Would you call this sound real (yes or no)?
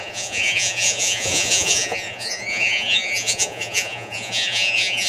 no